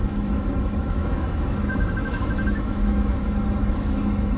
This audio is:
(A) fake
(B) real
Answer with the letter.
A